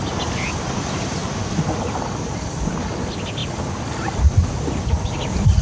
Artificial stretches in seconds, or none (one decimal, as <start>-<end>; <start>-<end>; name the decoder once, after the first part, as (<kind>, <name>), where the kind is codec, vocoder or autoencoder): none